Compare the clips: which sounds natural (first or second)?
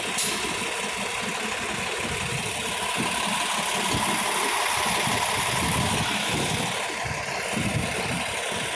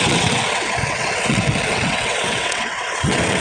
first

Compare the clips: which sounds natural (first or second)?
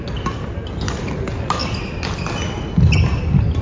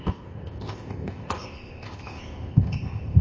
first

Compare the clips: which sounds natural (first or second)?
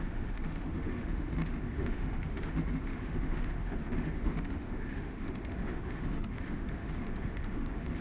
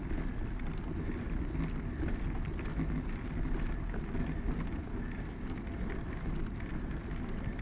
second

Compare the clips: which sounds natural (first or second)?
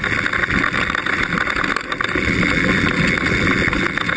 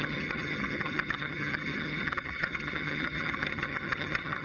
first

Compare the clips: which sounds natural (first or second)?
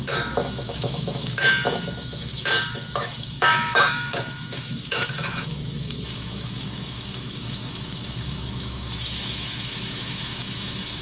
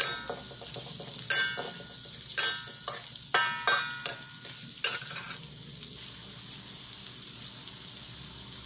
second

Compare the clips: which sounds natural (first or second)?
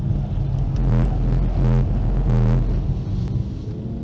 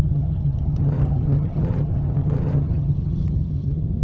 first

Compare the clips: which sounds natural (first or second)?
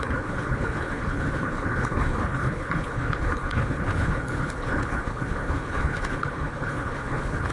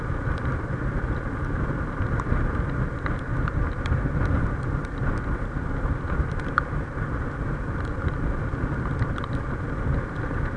second